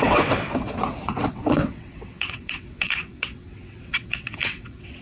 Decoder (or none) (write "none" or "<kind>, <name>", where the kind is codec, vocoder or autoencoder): vocoder, WaveNeXt